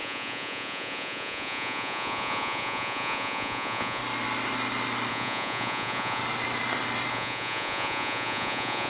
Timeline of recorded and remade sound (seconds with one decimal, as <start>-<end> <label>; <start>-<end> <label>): 0.0-4.0 remade; 4.0-5.1 recorded; 5.1-6.2 remade; 6.2-7.1 recorded; 7.1-8.9 remade